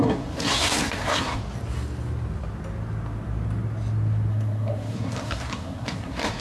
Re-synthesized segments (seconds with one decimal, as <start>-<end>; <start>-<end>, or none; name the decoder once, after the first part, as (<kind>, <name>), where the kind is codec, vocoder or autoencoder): 0.0-1.4 (codec, SNAC); 4.3-6.4